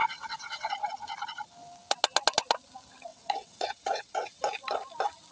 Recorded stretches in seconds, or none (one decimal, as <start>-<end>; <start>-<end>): 0.7-3.1; 4.4-5.3